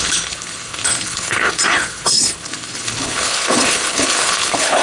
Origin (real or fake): fake